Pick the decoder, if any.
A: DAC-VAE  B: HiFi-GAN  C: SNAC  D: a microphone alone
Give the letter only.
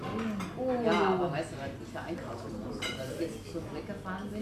D